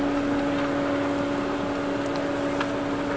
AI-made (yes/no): no